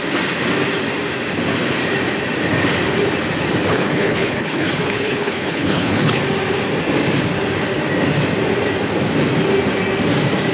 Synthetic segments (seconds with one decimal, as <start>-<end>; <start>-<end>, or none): 3.7-6.2